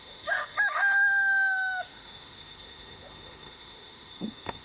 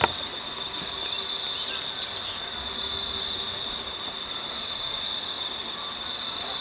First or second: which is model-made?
first